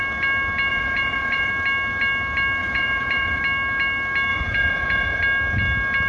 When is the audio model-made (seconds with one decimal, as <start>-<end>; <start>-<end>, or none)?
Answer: 0.7-1.5; 2.6-3.4; 4.3-5.2